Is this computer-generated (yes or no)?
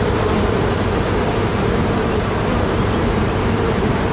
yes